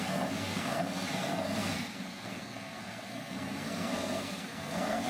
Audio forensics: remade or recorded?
remade